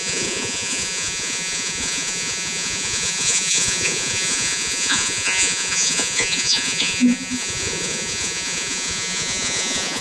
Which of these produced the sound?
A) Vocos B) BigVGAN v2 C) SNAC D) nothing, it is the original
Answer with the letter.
A